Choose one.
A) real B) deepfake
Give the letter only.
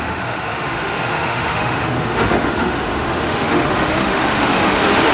B